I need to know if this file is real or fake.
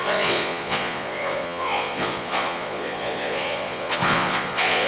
fake